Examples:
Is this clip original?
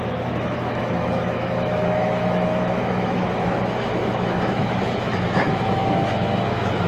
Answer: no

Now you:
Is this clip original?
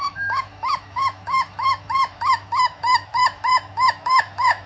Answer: no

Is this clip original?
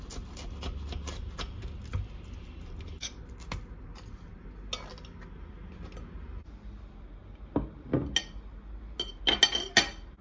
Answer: yes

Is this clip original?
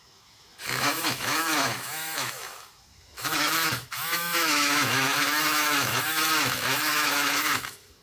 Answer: no